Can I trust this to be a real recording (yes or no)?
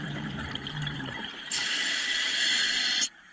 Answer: no